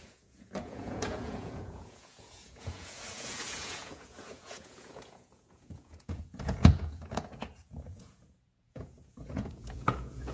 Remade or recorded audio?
remade